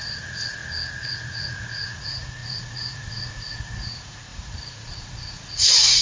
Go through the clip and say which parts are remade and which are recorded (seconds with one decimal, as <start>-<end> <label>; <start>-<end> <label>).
0.0-0.6 remade; 0.6-1.1 recorded; 1.1-6.0 remade